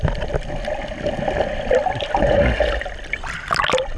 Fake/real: real